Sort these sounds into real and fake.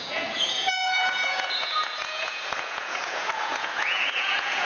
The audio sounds fake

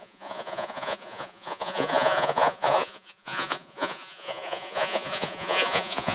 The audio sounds fake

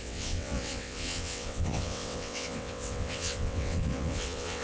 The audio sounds fake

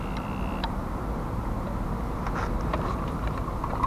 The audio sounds real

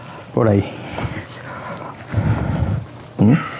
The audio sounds real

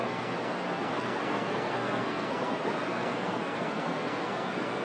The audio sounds fake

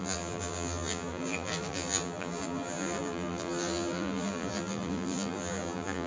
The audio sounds fake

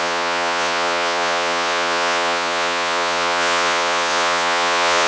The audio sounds fake